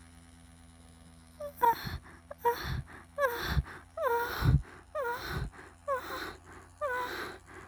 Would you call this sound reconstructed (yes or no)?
no